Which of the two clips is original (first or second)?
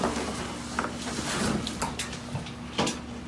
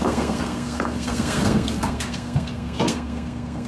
first